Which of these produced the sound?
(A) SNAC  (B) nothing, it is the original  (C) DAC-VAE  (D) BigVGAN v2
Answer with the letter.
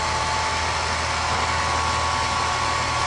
B